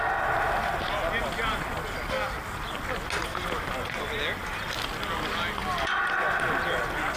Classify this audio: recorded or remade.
recorded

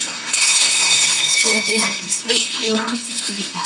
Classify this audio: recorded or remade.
remade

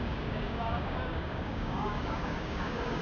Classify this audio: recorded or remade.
remade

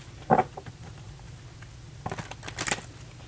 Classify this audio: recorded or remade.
recorded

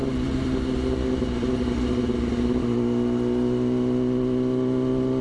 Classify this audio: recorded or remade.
recorded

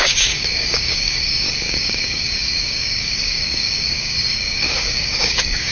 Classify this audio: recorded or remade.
remade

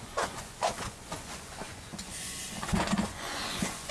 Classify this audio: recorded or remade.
remade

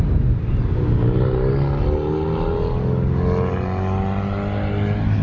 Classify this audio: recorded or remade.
recorded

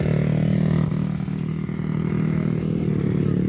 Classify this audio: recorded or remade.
recorded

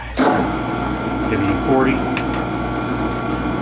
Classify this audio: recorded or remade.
recorded